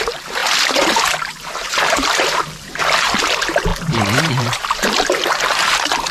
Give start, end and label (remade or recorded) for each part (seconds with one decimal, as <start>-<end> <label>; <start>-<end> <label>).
0.0-6.1 remade